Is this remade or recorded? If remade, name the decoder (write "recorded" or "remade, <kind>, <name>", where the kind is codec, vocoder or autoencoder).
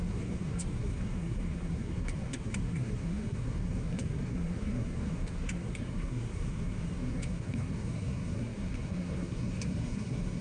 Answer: remade, codec, SNAC